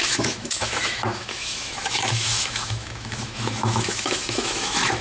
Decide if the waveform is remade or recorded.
remade